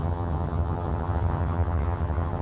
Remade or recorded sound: remade